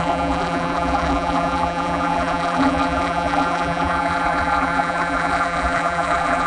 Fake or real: fake